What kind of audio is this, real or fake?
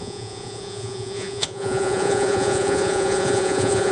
fake